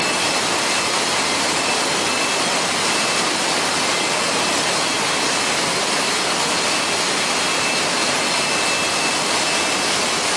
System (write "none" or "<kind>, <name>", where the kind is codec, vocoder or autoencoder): none